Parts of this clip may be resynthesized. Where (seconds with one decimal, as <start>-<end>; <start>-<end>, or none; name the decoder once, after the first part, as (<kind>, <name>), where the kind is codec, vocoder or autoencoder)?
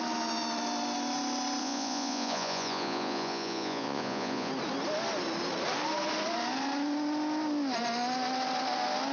1.6-4.5 (vocoder, Vocos)